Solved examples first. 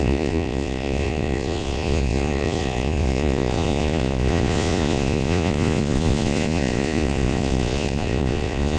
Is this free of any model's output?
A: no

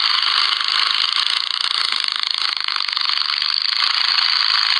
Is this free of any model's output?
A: yes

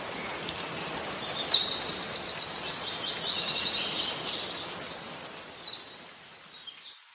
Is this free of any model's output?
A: yes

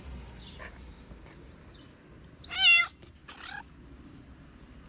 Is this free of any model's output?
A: yes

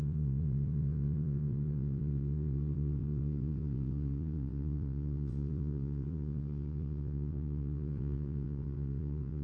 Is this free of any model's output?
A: no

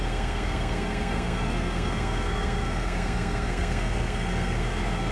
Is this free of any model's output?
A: no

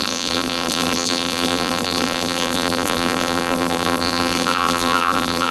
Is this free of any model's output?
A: no